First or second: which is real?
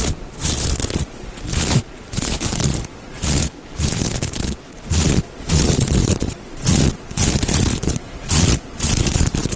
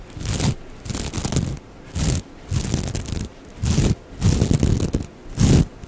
second